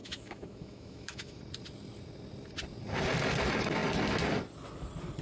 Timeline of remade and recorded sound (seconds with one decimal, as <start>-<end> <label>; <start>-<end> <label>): 0.0-1.4 remade; 1.4-5.2 recorded